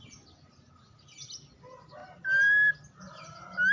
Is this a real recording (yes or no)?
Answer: yes